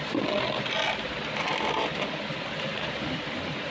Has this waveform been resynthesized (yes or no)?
no